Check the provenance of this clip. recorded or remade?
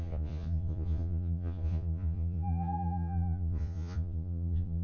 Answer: remade